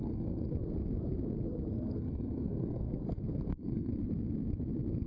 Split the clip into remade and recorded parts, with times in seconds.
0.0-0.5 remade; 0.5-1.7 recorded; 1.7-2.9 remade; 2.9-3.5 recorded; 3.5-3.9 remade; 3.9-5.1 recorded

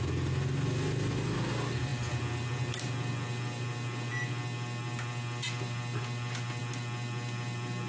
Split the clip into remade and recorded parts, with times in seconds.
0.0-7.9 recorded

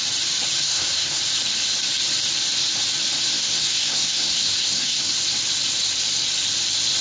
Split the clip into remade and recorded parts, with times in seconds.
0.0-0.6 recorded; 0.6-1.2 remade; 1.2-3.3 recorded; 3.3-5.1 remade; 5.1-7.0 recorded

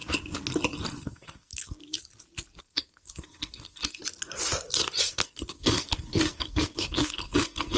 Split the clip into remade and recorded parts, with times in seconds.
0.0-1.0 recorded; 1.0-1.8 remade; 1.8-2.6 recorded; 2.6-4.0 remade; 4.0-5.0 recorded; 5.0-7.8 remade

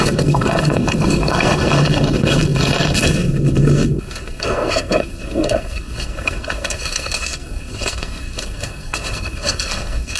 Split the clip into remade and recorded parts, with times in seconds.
0.0-10.2 remade

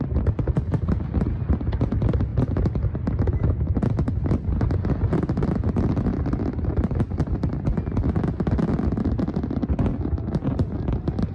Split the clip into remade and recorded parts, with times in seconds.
0.0-11.3 recorded

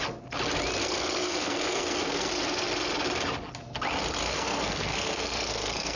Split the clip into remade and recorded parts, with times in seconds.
0.0-0.8 recorded; 0.8-2.3 remade; 2.3-4.3 recorded; 4.3-6.0 remade

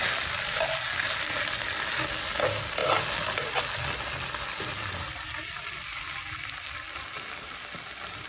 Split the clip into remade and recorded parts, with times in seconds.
0.0-8.3 recorded